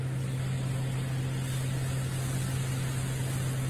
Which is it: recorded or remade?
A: recorded